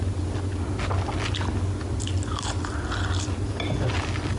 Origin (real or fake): real